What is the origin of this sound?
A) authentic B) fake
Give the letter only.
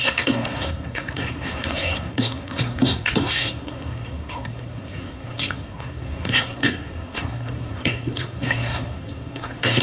B